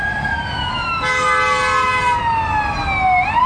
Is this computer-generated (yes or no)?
no